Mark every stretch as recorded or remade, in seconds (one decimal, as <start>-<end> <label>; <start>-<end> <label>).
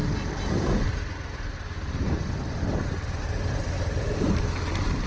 0.0-5.1 recorded